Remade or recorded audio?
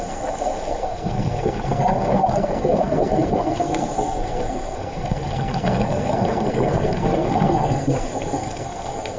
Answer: remade